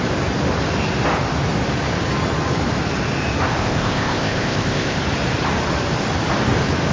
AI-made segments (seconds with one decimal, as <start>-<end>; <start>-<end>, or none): 3.6-5.0